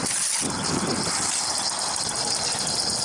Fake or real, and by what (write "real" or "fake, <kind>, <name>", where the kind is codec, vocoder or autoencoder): real